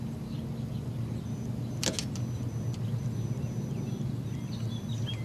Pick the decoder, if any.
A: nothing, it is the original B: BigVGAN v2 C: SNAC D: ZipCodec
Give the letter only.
A